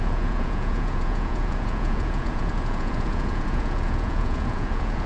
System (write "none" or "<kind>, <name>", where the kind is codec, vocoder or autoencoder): vocoder, Vocos